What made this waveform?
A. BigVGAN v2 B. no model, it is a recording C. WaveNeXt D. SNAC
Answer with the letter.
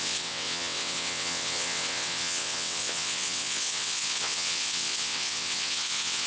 C